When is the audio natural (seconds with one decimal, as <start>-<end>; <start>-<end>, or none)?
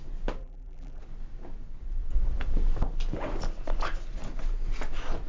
0.0-0.4; 1.0-5.3